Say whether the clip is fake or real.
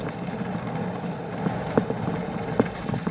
real